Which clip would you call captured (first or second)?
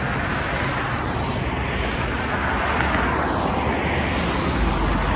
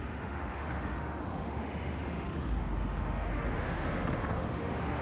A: first